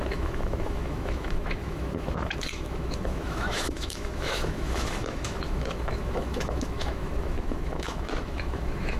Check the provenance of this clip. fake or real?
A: fake